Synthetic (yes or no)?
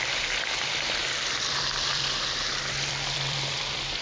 yes